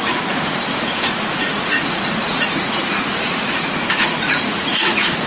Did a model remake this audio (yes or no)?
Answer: yes